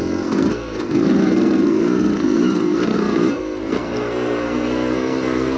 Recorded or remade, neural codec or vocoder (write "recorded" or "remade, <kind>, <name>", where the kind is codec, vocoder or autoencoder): remade, codec, SNAC